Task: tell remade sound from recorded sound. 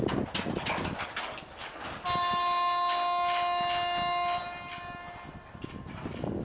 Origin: recorded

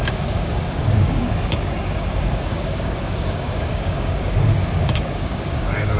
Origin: remade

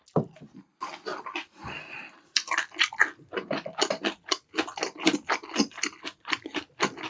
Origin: recorded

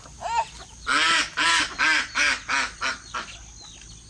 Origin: recorded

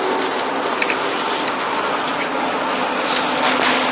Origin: recorded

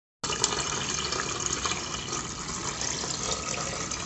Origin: recorded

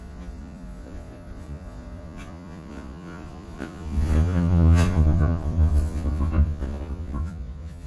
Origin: remade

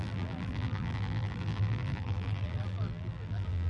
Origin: remade